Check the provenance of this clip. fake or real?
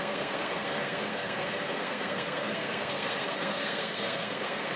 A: fake